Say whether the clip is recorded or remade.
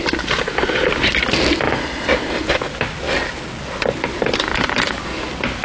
recorded